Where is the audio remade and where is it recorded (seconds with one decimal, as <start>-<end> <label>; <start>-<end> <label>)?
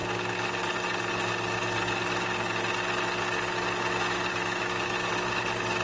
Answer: 0.0-4.3 recorded; 4.3-5.1 remade; 5.1-5.8 recorded